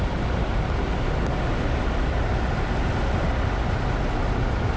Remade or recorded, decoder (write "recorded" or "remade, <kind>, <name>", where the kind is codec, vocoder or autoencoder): recorded